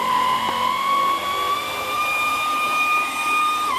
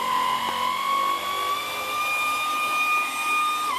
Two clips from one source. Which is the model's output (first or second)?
first